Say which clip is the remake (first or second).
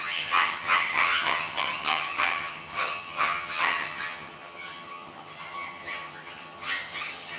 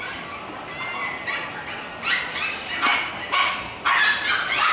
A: first